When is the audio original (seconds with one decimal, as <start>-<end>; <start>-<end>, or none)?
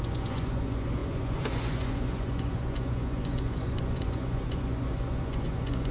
none